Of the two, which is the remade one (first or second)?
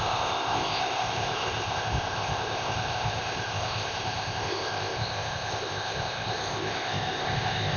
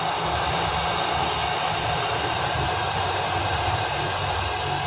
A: first